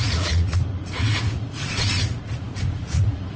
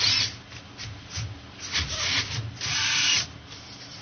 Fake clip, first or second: first